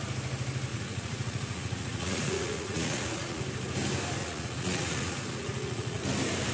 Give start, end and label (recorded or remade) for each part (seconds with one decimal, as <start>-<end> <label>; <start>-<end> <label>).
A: 0.0-0.7 recorded; 0.7-3.4 remade; 3.4-4.2 recorded; 4.2-6.0 remade; 6.0-6.5 recorded